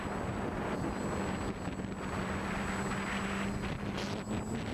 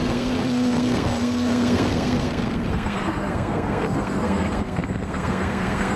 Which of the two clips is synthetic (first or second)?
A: second